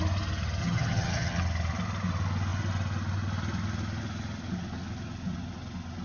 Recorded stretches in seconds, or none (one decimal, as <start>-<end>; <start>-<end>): 0.0-0.6; 1.4-6.0